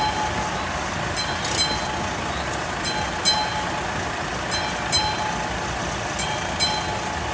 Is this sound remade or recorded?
recorded